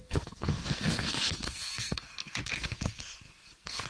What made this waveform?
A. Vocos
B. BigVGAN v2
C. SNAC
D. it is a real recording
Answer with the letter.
C